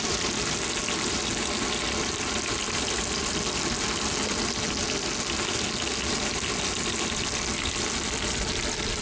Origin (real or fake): real